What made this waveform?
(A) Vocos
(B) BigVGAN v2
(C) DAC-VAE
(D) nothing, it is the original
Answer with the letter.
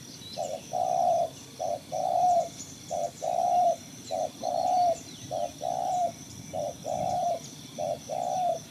B